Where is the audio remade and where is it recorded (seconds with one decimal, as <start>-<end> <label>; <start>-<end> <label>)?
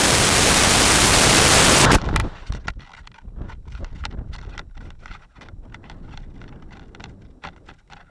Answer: 0.0-8.1 recorded